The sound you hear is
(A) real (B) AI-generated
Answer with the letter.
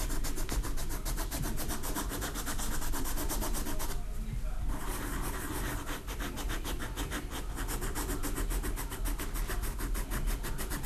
A